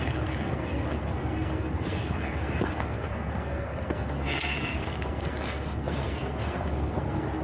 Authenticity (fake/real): fake